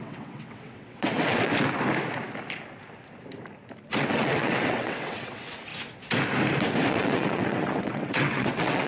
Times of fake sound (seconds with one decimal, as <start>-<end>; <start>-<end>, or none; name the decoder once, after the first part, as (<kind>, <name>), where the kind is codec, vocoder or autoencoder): 0.0-1.5 (vocoder, WaveNeXt); 4.0-5.7; 6.9-8.9